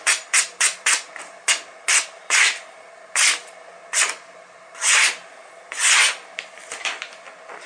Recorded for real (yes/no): yes